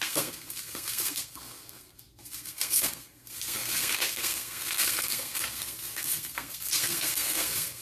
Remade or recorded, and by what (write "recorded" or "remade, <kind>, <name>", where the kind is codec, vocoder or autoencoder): remade, codec, SNAC